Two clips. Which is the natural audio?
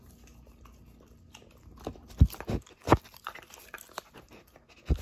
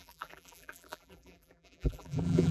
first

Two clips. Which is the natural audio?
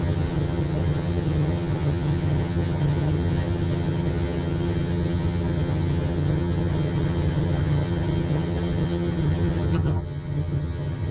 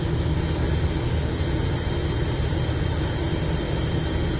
second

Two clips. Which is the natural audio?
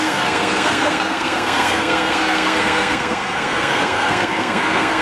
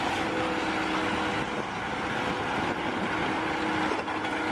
second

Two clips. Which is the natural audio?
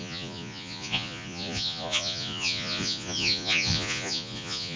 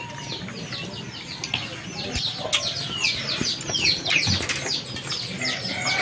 second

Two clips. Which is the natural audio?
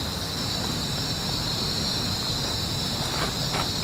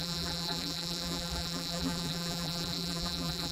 first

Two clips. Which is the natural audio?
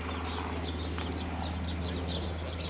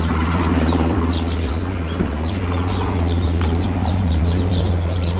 first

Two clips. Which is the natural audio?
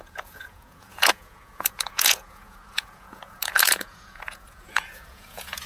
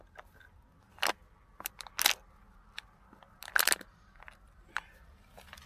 second